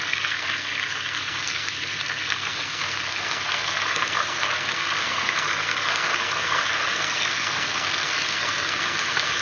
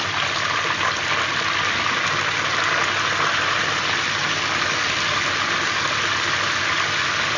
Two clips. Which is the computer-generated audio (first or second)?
first